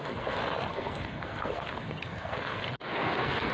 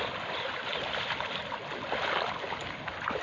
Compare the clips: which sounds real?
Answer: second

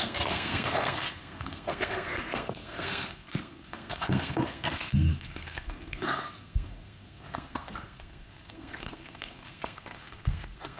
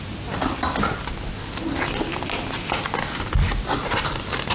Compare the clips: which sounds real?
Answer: second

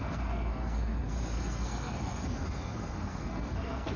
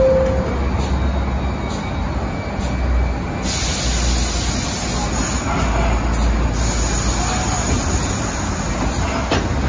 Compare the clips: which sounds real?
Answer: second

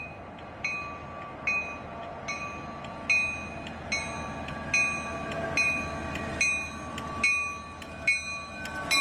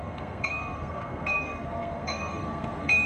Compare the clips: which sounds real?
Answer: first